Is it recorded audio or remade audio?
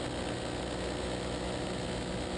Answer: recorded